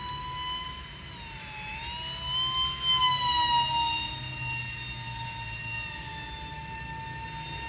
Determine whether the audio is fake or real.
real